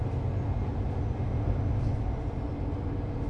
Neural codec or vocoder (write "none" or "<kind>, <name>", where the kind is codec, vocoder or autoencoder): none